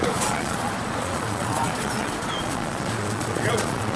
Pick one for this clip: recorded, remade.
remade